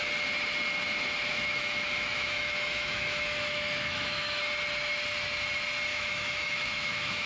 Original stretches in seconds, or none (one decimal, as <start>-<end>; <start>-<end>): 0.0-1.3; 4.4-5.9